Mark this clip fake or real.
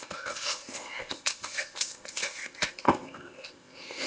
fake